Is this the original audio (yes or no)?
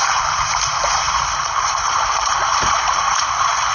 no